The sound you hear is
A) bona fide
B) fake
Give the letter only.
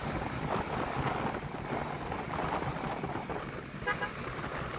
A